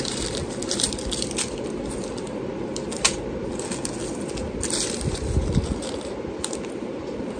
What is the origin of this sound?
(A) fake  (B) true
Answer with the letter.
B